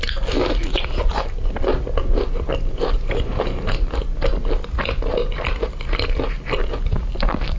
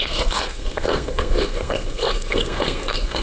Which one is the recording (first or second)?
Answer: first